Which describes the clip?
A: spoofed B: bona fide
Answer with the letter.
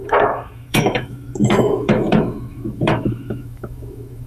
A